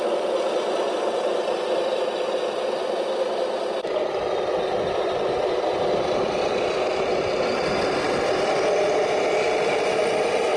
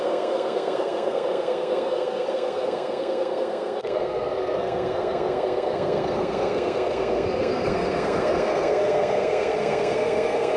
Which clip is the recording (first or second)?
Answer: first